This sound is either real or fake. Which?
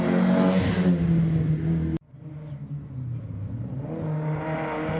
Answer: real